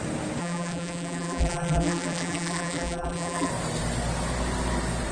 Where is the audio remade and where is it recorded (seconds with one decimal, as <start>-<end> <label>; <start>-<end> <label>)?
0.0-0.4 recorded; 0.4-3.5 remade; 3.5-5.1 recorded

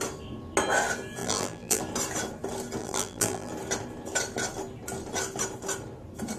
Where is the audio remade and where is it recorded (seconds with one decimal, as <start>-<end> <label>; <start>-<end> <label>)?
0.0-1.2 recorded; 1.2-1.8 remade; 1.8-2.8 recorded; 2.8-3.5 remade; 3.5-6.4 recorded